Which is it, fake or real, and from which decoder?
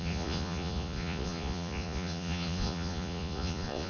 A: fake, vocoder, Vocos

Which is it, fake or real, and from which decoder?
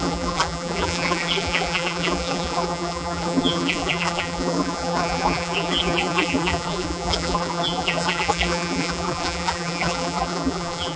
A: fake, vocoder, BigVGAN v2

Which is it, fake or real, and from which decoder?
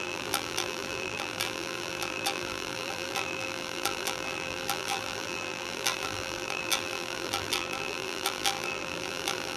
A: fake, vocoder, BigVGAN v2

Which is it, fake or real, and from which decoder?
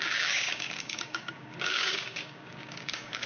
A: fake, codec, DAC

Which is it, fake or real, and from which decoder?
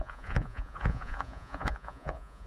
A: fake, vocoder, Vocos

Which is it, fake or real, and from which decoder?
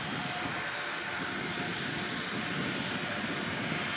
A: real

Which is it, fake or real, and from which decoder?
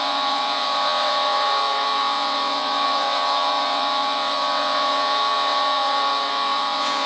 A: fake, vocoder, WaveNeXt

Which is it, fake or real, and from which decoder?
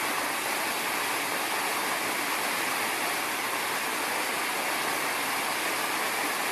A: real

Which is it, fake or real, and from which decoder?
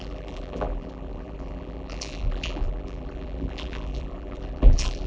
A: fake, vocoder, BigVGAN v2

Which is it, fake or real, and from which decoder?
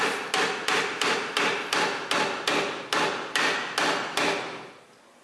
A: real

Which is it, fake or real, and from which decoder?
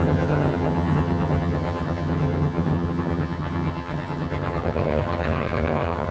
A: fake, vocoder, HiFi-GAN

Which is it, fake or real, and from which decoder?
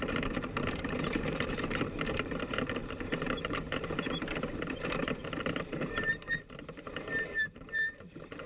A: fake, vocoder, BigVGAN v2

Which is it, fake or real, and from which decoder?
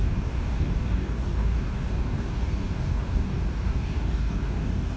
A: fake, codec, DAC